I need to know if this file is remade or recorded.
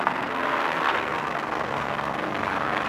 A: remade